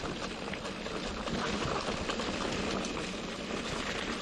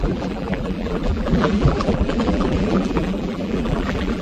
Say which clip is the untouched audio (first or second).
first